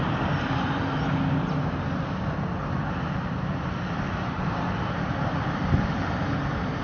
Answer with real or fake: real